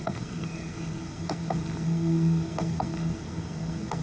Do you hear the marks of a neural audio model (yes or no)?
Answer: yes